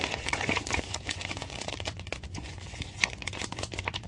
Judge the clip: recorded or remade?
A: remade